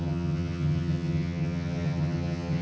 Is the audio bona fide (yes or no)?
no